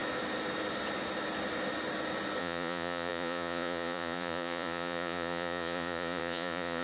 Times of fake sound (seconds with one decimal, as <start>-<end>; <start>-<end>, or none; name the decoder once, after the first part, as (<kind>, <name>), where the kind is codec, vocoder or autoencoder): 2.4-6.8 (vocoder, Vocos)